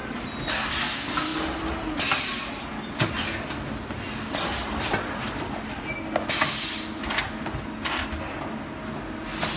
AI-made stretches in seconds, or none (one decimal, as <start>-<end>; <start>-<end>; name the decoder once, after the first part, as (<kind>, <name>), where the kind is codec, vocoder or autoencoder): none